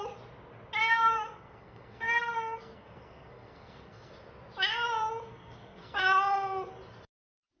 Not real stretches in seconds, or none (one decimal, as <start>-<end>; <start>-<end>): 0.8-4.1; 5.3-6.0